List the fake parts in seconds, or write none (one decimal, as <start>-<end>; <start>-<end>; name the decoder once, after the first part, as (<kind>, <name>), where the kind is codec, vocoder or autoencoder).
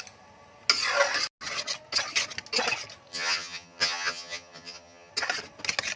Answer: 3.1-5.1 (vocoder, HiFi-GAN)